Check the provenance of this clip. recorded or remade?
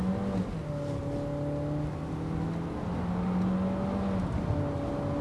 recorded